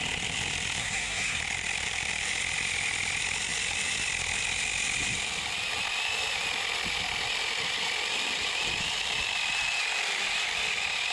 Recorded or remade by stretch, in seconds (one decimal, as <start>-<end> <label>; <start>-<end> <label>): 0.0-0.8 recorded; 0.8-1.4 remade; 1.4-11.1 recorded